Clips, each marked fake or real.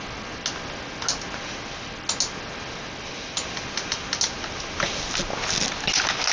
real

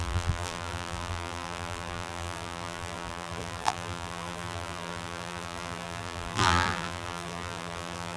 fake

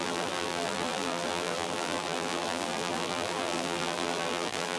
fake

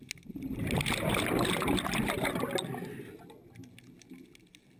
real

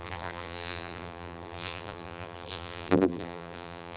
fake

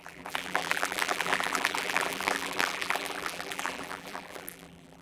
fake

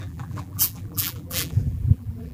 fake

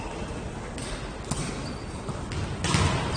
real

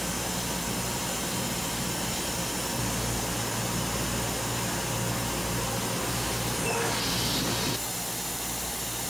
real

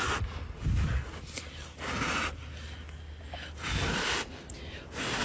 real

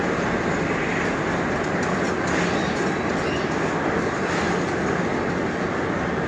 real